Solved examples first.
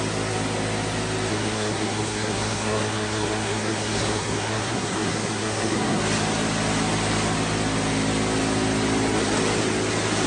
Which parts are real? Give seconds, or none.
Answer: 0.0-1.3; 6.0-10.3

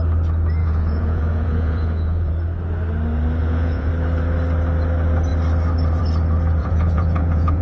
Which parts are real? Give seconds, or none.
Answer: 0.0-0.6; 2.3-3.4; 3.9-6.6

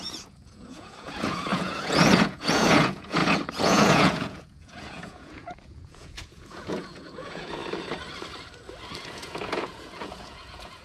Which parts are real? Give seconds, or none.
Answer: 7.6-9.0

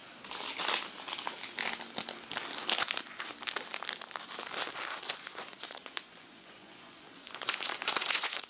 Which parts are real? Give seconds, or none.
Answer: 0.0-5.1

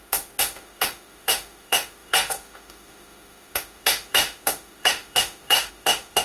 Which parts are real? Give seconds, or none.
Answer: none

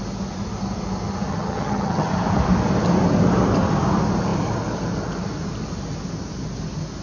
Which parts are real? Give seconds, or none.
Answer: 0.0-1.3; 2.1-7.0

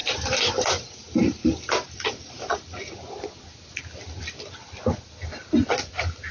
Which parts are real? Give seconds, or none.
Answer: 1.4-5.2

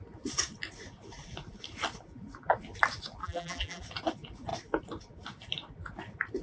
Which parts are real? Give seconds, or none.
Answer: 0.0-3.2; 3.8-6.4